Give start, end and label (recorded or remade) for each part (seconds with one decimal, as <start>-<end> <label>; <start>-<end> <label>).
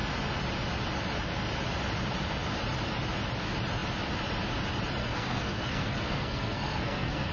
0.0-5.0 recorded; 5.0-7.3 remade